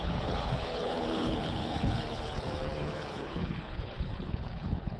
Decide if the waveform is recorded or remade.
remade